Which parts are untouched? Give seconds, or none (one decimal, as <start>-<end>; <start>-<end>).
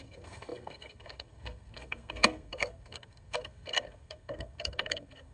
none